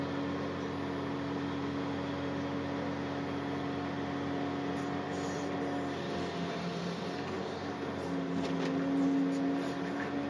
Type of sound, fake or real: real